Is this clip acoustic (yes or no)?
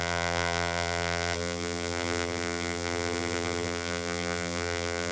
no